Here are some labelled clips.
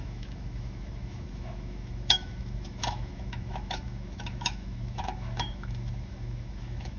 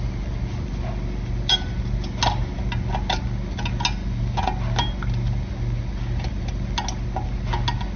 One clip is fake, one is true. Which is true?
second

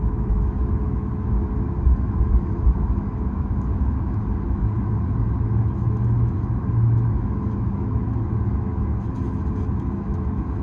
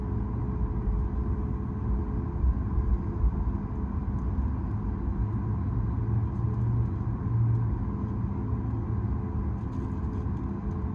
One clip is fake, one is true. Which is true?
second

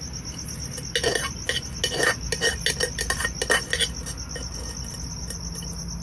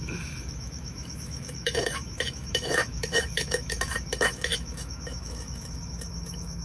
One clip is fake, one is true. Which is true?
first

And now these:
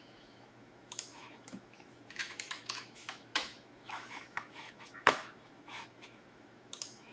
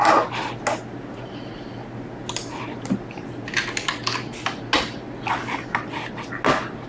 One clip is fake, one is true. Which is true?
second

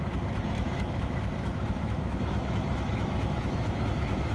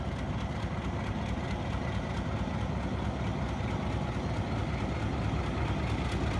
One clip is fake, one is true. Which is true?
second